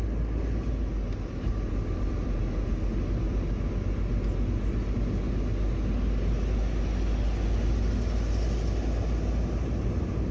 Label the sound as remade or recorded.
recorded